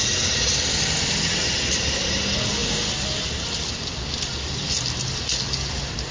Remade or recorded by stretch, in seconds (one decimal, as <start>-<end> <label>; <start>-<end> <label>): 0.0-6.1 recorded